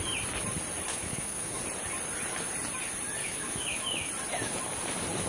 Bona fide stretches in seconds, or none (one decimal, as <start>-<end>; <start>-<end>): 0.0-0.9; 1.6-3.2; 4.1-5.3